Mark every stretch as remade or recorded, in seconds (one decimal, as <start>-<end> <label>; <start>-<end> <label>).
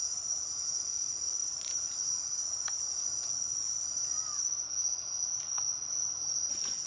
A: 0.0-1.4 recorded; 1.4-2.2 remade; 2.2-4.8 recorded; 4.8-5.5 remade; 5.5-6.9 recorded